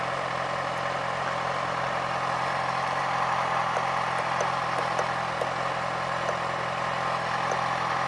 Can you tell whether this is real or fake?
real